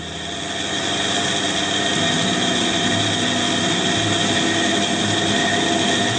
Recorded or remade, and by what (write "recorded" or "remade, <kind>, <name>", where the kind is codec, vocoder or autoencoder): recorded